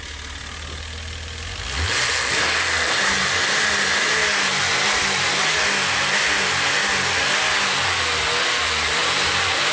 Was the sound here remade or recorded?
recorded